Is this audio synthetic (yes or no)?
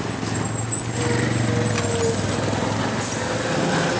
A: no